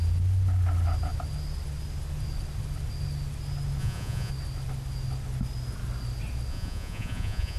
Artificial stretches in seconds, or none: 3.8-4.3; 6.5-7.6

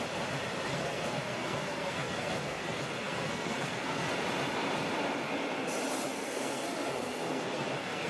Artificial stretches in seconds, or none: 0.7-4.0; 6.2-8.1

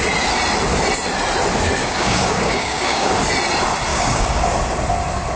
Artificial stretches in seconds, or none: 1.8-3.1; 3.9-4.4

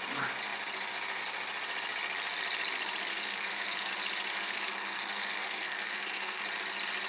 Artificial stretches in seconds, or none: 3.1-3.9; 4.3-6.4